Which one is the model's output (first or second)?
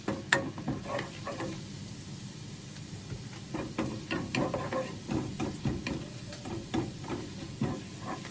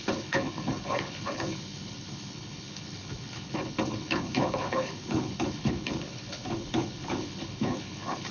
second